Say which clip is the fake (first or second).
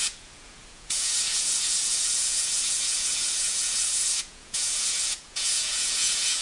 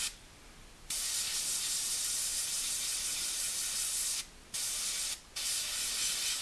first